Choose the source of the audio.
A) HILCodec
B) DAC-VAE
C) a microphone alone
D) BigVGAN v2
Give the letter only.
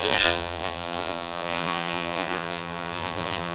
D